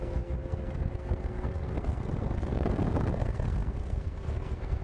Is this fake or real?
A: fake